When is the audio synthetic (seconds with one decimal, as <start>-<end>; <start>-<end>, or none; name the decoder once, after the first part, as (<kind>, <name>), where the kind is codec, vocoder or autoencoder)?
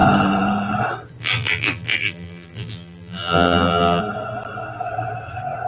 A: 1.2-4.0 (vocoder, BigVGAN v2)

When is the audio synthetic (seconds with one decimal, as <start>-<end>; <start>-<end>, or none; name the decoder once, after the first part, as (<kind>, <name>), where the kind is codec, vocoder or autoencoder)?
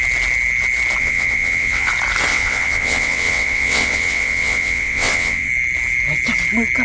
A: 1.0-1.9 (vocoder, WaveNeXt); 2.3-5.5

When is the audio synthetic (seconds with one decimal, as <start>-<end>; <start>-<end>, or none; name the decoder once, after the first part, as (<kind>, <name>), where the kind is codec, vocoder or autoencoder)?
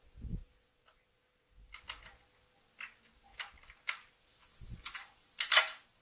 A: 0.4-1.8 (vocoder, BigVGAN v2); 3.3-6.0